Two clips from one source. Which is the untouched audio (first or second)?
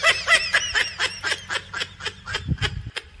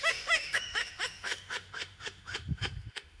first